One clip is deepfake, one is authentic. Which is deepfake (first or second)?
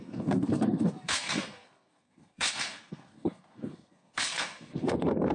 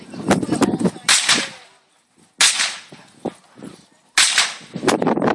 first